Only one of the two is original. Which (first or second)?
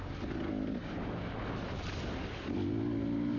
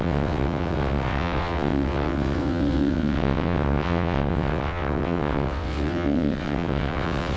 first